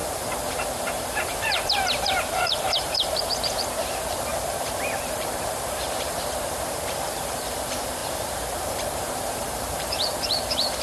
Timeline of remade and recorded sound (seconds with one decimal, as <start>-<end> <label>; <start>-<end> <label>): 0.0-10.8 remade